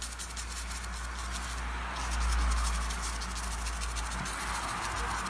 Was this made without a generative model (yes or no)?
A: yes